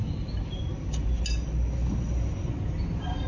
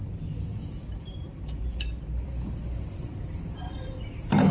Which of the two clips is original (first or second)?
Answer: first